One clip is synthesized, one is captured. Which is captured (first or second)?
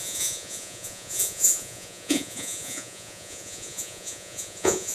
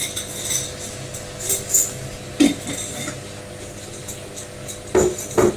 second